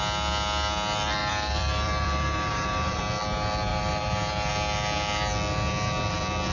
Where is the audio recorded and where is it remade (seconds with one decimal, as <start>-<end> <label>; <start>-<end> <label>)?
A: 0.0-1.2 recorded; 1.2-3.0 remade; 3.0-3.7 recorded; 3.7-4.5 remade; 4.5-6.5 recorded